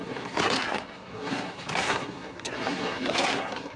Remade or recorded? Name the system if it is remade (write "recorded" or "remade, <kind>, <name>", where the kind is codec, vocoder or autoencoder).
remade, codec, SNAC